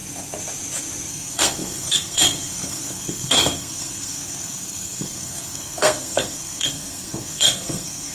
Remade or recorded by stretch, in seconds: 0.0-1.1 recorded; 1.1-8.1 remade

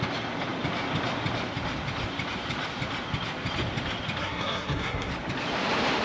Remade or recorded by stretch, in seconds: 0.0-4.2 recorded; 4.2-5.1 remade; 5.1-6.0 recorded

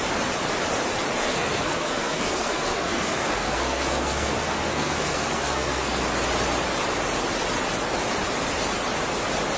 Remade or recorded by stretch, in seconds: 0.0-1.2 recorded; 1.2-6.0 remade; 6.0-9.6 recorded

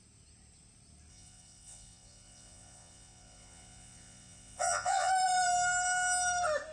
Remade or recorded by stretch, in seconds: 0.0-1.1 recorded; 1.1-5.1 remade; 5.1-6.7 recorded

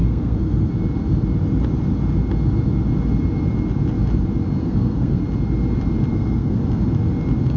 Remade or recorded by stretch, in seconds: 0.0-0.7 remade; 0.7-4.6 recorded; 4.6-5.2 remade; 5.2-6.1 recorded; 6.1-6.6 remade; 6.6-7.6 recorded

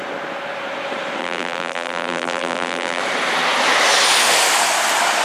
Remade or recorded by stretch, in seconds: 0.0-1.2 recorded; 1.2-3.0 remade; 3.0-5.2 recorded